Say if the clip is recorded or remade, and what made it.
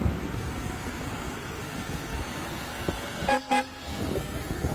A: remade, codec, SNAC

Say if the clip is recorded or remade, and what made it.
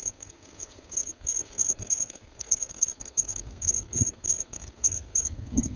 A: remade, codec, SNAC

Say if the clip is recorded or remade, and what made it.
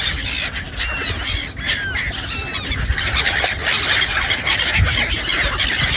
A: recorded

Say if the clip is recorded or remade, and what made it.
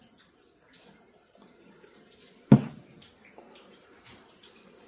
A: recorded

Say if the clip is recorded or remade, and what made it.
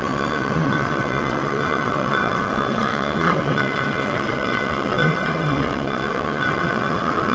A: remade, vocoder, WaveNeXt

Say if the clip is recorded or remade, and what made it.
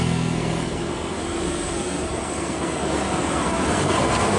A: remade, codec, SNAC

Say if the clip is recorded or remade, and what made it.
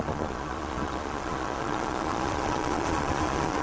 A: remade, vocoder, Vocos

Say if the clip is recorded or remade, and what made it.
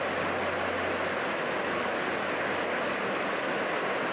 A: recorded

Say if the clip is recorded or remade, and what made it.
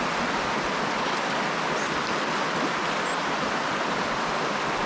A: recorded